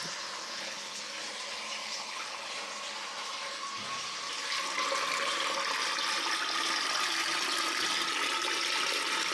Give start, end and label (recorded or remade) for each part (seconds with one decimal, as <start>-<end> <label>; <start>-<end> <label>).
0.0-0.4 recorded; 0.4-1.0 remade; 1.0-1.8 recorded; 1.8-2.5 remade; 2.5-9.3 recorded